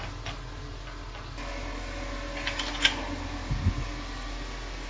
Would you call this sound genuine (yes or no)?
yes